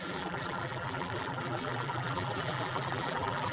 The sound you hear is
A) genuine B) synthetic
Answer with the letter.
B